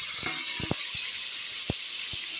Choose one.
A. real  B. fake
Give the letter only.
A